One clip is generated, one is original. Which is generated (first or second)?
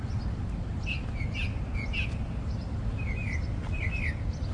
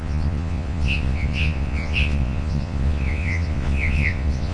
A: second